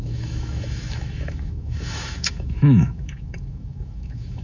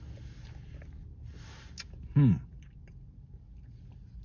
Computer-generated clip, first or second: first